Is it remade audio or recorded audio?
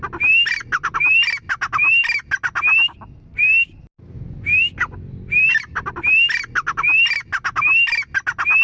recorded